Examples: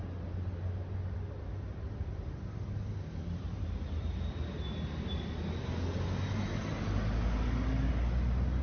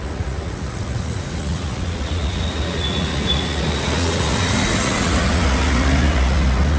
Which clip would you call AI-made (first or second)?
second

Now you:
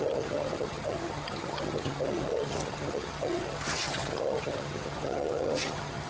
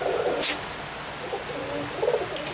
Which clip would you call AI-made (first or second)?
first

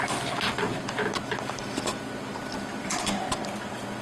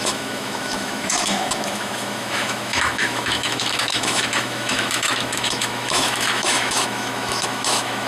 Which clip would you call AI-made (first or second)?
second